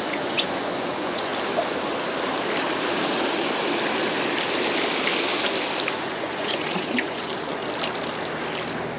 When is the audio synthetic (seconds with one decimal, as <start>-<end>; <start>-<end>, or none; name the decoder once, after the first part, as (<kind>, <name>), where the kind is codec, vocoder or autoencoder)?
0.0-1.3 (vocoder, Vocos); 5.9-7.6